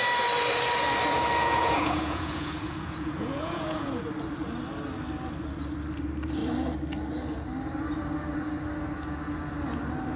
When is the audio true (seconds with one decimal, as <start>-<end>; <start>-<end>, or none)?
0.0-1.4; 3.9-10.2